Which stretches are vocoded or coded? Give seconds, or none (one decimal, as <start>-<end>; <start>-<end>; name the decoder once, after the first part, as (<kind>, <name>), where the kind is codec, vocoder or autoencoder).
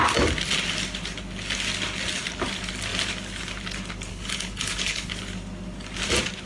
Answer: 4.1-5.1 (codec, HILCodec)